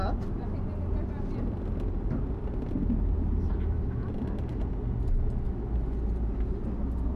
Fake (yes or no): no